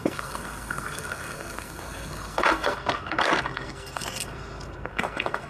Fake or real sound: fake